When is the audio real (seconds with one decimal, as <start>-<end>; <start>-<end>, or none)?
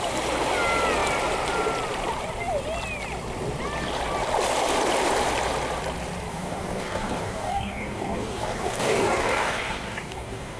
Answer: 0.0-6.3